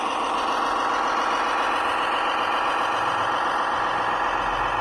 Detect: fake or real real